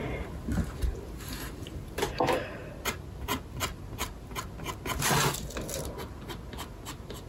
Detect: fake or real real